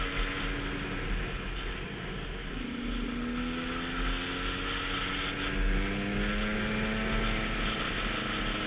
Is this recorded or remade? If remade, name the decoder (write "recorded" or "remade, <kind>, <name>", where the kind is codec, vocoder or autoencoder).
recorded